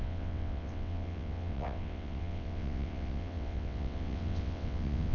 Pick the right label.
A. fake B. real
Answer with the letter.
A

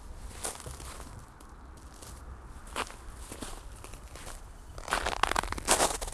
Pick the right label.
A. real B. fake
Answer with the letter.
A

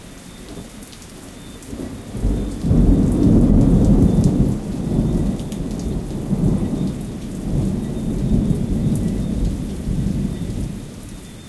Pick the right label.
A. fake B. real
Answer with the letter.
B